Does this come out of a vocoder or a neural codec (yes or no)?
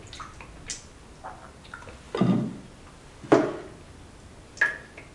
no